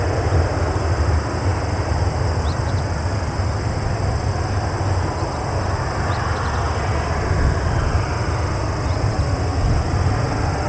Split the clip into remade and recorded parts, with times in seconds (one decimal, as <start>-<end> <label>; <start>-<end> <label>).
0.0-10.7 recorded